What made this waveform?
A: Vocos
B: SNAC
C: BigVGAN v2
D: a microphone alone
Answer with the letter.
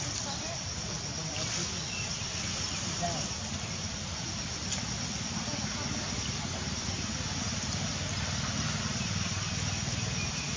D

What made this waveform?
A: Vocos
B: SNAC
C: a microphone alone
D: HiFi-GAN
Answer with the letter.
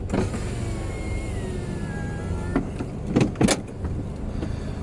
C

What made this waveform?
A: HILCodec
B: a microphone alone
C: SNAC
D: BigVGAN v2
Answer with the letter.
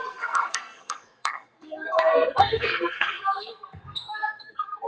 C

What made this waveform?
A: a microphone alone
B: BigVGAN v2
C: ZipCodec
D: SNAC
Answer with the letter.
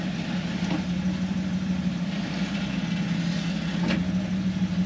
A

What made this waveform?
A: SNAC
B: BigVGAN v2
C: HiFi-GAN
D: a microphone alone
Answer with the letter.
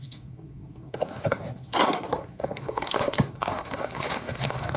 A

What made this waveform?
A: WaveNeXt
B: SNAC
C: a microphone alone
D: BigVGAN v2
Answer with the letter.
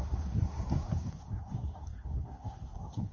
B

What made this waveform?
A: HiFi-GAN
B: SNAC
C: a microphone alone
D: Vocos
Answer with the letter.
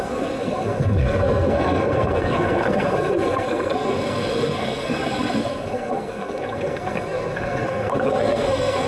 B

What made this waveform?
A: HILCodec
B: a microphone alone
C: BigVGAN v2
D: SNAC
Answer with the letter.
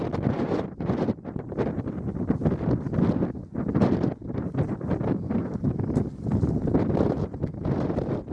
B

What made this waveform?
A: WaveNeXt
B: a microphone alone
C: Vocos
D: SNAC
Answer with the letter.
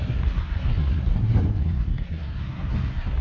D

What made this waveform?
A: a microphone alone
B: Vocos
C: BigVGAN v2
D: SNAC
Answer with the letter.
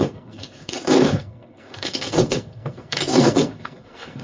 D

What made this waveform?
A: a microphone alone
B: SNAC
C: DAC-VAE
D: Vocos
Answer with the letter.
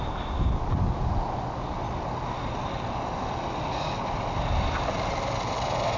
A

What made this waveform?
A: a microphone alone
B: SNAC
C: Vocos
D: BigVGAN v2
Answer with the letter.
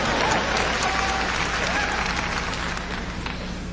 A